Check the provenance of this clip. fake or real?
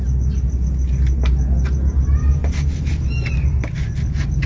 real